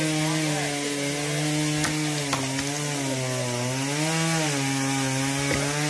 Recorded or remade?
recorded